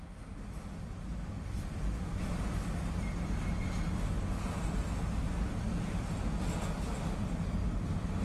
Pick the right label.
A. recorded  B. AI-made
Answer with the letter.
A